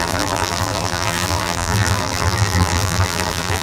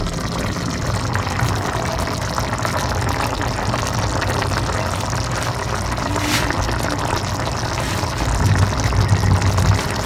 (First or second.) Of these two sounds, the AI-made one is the first